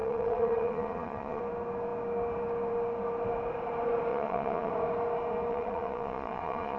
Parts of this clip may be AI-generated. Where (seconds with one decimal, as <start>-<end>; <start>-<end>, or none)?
0.0-1.4; 4.1-4.7; 5.5-6.8